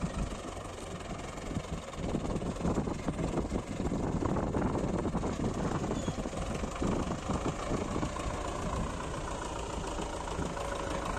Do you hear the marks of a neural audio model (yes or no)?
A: no